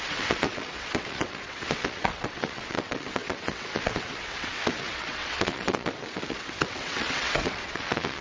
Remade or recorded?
remade